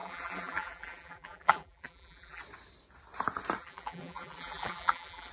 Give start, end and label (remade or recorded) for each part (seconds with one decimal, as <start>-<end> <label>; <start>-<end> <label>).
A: 0.0-2.4 remade; 2.4-3.6 recorded; 3.6-5.3 remade

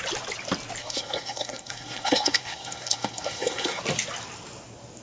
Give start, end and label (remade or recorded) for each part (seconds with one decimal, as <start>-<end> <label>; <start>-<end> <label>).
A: 0.0-0.8 recorded; 0.8-3.8 remade; 3.8-5.0 recorded

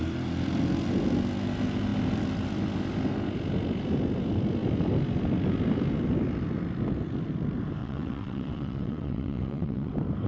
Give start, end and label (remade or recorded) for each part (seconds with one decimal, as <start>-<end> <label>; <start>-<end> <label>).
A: 0.0-7.8 recorded; 7.8-9.9 remade; 9.9-10.3 recorded

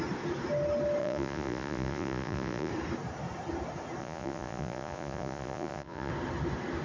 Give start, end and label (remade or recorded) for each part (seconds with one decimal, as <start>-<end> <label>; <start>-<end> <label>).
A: 0.0-1.0 recorded; 1.0-2.7 remade; 2.7-4.0 recorded; 4.0-6.1 remade; 6.1-6.8 recorded

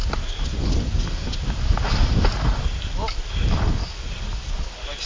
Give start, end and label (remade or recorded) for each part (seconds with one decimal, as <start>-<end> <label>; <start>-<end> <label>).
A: 0.0-5.1 recorded

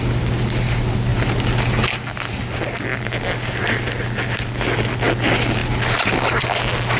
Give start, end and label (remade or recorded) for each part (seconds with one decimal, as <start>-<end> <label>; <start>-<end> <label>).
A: 0.0-7.0 recorded

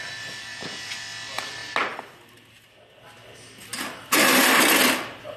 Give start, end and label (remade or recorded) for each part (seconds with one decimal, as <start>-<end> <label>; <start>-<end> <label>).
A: 0.0-0.5 recorded; 0.5-1.0 remade; 1.0-5.4 recorded

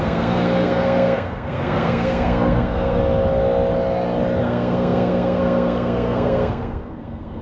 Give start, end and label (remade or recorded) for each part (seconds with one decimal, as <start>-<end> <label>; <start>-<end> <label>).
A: 0.0-3.0 remade; 3.0-4.4 recorded; 4.4-7.4 remade